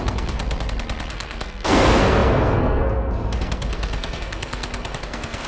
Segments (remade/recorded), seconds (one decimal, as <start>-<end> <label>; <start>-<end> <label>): 0.0-0.4 remade; 0.4-1.1 recorded; 1.1-5.5 remade